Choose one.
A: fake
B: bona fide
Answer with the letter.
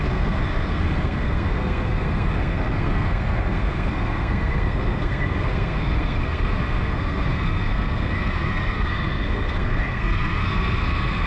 A